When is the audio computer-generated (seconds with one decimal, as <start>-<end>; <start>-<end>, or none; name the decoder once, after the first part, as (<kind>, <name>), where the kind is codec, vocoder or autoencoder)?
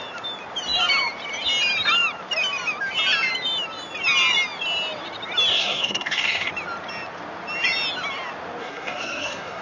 5.5-6.5 (codec, SNAC); 8.6-9.6